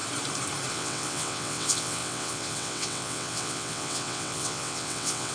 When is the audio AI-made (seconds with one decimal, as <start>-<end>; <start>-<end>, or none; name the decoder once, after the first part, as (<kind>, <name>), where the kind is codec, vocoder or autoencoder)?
0.7-5.3 (vocoder, WaveNeXt)

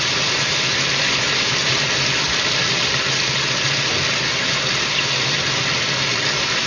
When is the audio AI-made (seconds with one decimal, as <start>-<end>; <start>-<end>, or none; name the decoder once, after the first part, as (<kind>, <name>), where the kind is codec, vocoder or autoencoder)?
none

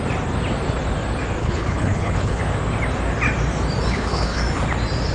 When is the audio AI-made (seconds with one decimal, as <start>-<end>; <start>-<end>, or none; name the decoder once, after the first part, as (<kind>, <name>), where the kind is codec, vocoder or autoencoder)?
1.4-2.4 (codec, HILCodec); 3.9-4.4

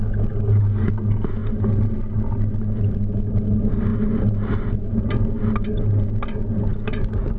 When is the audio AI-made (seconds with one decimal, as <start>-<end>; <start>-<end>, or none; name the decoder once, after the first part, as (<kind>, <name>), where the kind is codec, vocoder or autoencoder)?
none

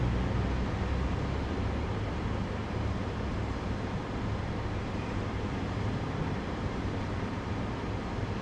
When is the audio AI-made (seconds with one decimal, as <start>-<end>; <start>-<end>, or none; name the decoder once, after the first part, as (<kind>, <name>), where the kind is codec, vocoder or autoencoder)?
2.6-7.5 (vocoder, BigVGAN v2)

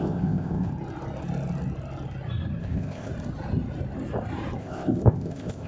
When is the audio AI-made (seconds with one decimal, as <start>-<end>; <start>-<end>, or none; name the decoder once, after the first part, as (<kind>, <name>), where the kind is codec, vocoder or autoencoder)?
0.0-0.7 (codec, ZipCodec); 2.6-3.1; 4.6-5.7

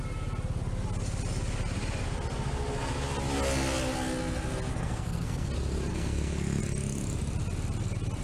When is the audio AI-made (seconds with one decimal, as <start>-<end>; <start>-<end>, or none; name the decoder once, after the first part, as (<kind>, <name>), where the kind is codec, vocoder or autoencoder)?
4.7-5.5 (codec, SNAC); 5.9-6.6